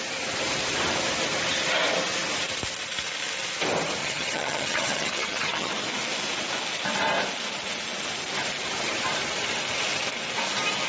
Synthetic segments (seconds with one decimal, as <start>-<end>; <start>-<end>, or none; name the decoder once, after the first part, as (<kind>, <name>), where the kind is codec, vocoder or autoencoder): 4.0-5.7 (vocoder, HiFi-GAN)